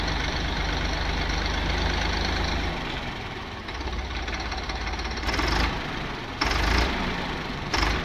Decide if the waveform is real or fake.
fake